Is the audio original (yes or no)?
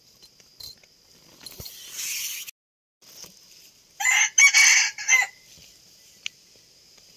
yes